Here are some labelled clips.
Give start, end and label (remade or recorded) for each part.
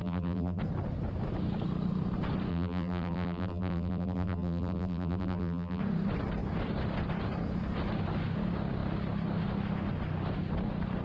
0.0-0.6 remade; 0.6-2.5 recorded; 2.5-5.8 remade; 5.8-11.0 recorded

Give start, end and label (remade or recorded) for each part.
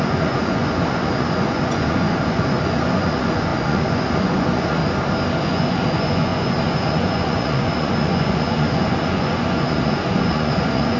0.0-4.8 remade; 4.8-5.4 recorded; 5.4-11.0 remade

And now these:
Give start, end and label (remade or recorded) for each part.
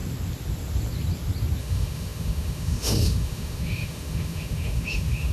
0.0-1.6 recorded; 1.6-5.3 remade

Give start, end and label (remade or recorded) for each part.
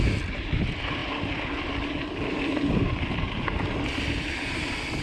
0.0-5.0 recorded